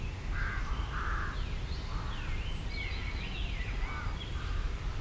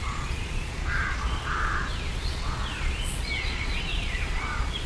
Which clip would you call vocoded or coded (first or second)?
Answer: second